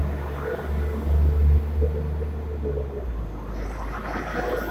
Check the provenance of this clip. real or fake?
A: real